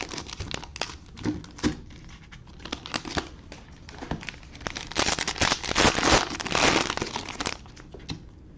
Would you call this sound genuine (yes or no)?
yes